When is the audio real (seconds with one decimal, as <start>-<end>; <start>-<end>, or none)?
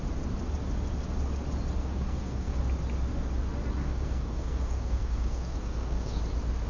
0.0-1.8; 2.6-3.8; 6.2-6.7